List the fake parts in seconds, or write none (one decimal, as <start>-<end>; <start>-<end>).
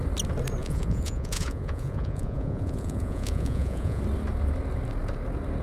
0.6-4.0